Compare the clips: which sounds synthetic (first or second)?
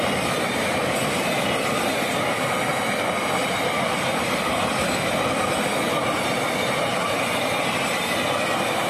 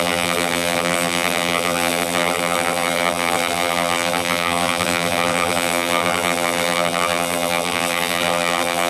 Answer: second